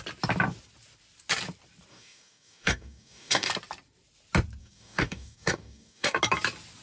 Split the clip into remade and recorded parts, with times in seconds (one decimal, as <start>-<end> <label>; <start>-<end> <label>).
0.0-1.9 recorded; 1.9-3.5 remade; 3.5-4.6 recorded; 4.6-6.2 remade; 6.2-6.8 recorded